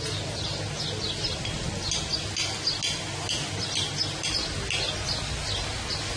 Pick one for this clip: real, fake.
real